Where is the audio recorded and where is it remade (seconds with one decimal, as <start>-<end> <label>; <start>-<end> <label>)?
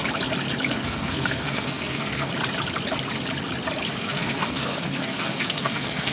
0.0-0.7 recorded; 0.7-2.3 remade; 2.3-3.9 recorded; 3.9-6.1 remade